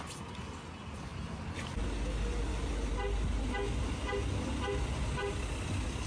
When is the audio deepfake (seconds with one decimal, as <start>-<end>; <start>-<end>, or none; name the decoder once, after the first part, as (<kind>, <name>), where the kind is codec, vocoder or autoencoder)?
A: none